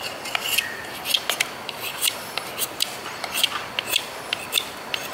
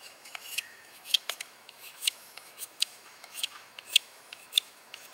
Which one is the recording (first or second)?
first